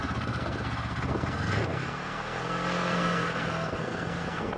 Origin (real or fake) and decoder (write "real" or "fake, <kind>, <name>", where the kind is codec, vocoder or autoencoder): fake, codec, SNAC